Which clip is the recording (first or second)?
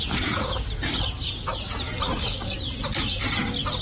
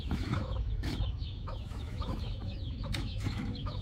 first